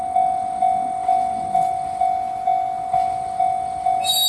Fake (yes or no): no